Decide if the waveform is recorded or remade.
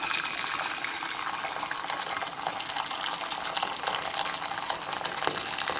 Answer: recorded